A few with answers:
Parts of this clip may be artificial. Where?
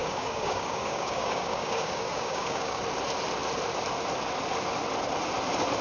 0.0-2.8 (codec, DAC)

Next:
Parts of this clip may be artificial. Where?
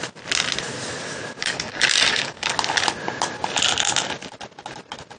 1.4-2.5 (codec, DAC)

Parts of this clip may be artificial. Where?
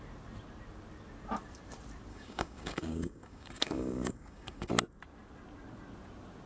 2.1-4.7 (codec, DAC)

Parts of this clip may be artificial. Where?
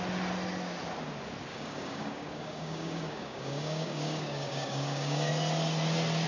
1.5-5.3 (codec, DAC)